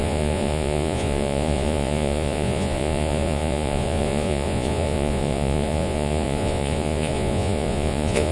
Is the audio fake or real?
fake